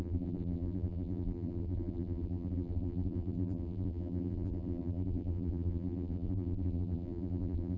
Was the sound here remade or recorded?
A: remade